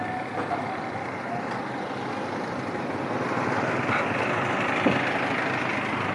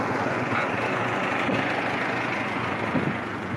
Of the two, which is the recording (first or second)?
first